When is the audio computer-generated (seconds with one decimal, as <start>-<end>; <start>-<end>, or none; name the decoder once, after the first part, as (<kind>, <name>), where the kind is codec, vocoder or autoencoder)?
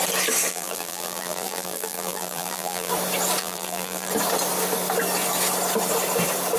0.5-2.9 (vocoder, BigVGAN v2); 3.4-4.1